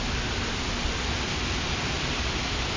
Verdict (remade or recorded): recorded